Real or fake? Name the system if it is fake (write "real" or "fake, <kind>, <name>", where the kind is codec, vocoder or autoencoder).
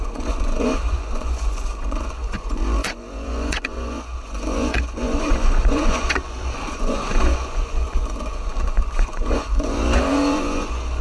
fake, vocoder, Vocos